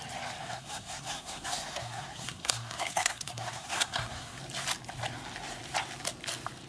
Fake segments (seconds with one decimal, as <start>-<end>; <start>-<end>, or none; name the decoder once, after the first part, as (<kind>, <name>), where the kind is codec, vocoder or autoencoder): 0.4-4.4 (codec, SNAC)